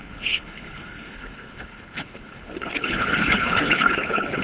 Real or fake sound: fake